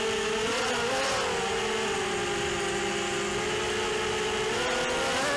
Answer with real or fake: real